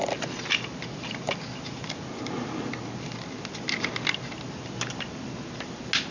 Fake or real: real